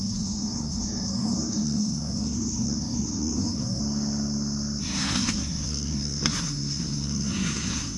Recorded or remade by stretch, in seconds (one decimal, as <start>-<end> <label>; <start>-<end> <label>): 0.0-3.8 remade; 3.8-4.8 recorded; 4.8-8.0 remade